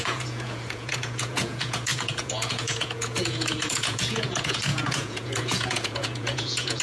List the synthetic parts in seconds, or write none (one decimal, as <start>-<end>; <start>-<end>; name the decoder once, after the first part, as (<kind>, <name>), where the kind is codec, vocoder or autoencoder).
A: 0.0-6.8 (vocoder, Vocos)